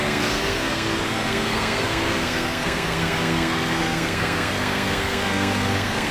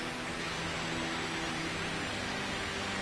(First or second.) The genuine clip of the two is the second